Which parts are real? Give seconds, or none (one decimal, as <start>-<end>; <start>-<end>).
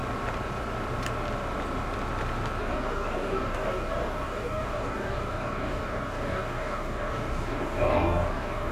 0.0-2.6